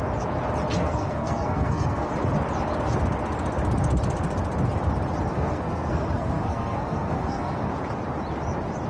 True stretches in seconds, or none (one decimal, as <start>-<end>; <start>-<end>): 0.0-0.8; 2.1-5.3; 7.7-8.9